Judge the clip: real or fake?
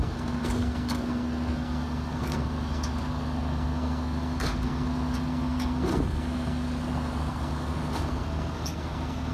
fake